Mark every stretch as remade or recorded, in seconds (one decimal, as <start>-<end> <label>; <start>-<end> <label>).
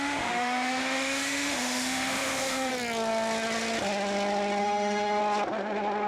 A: 0.0-2.7 remade; 2.7-4.6 recorded; 4.6-5.2 remade; 5.2-6.1 recorded